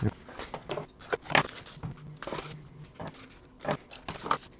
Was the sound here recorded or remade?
recorded